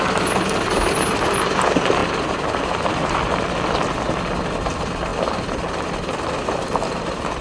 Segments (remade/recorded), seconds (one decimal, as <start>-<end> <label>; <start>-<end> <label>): 0.0-7.4 recorded